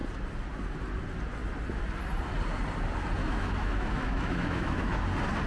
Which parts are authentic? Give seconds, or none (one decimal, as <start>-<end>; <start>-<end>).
0.0-3.2; 5.0-5.5